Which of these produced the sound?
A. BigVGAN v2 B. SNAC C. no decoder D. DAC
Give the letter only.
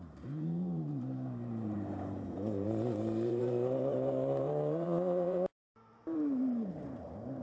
A